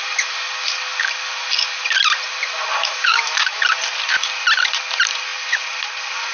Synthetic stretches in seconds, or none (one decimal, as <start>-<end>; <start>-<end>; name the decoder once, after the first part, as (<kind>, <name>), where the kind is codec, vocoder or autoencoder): 2.8-3.6 (autoencoder, DAC-VAE)